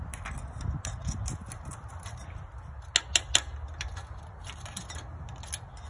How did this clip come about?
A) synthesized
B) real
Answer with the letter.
B